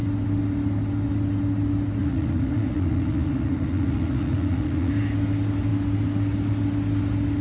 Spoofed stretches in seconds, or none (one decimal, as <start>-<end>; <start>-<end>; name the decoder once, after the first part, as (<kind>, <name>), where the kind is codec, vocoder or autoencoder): 2.0-4.9 (vocoder, Vocos)